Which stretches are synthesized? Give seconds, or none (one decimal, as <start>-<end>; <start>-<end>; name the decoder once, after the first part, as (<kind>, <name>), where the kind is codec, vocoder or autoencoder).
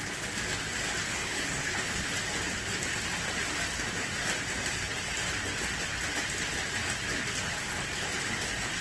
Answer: 1.1-2.1 (codec, HILCodec)